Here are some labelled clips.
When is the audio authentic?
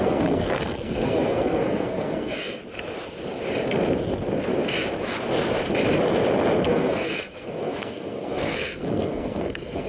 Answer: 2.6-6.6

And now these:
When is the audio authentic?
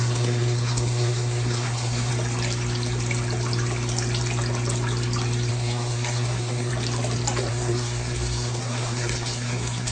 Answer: 2.1-5.5; 6.7-7.5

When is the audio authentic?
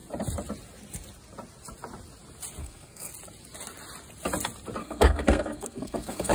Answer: 0.0-2.6; 3.1-4.8